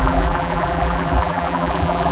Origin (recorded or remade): remade